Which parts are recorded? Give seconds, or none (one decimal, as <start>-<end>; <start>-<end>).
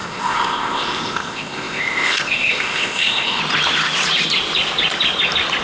3.4-5.6